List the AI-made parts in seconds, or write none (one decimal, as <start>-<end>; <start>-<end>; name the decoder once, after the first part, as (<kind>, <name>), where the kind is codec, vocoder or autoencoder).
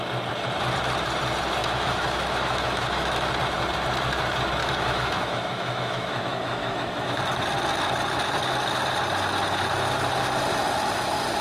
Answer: 1.6-3.3 (autoencoder, DAC-VAE); 4.6-7.2